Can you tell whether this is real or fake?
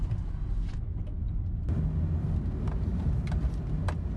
real